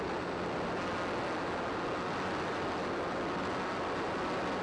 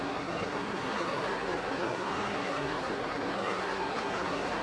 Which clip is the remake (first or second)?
second